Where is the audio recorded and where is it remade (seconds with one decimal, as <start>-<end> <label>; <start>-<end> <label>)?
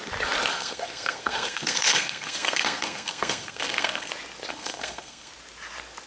0.0-0.5 recorded; 0.5-4.1 remade; 4.1-4.5 recorded; 4.5-5.3 remade; 5.3-6.1 recorded